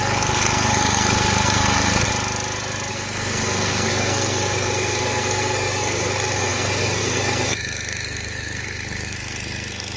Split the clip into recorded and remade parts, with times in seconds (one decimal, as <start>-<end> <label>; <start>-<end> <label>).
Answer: 0.0-2.1 remade; 2.1-2.9 recorded; 2.9-10.0 remade